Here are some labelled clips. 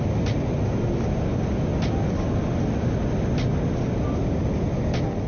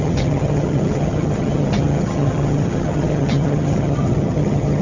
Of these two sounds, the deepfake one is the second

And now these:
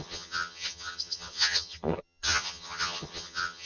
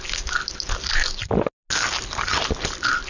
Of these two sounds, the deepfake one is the first